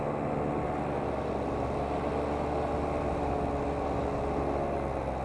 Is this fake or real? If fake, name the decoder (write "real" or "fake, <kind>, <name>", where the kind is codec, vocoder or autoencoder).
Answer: real